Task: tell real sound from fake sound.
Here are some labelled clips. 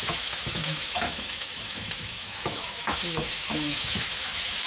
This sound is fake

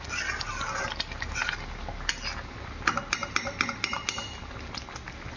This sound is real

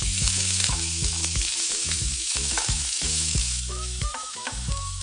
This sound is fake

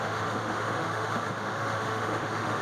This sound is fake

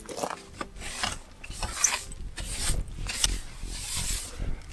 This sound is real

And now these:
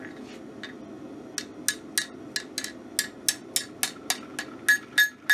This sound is real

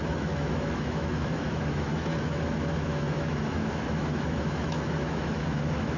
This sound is fake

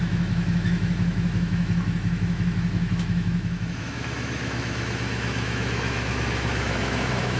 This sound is fake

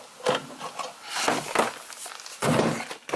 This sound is real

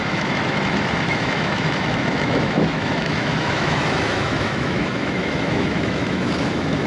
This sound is fake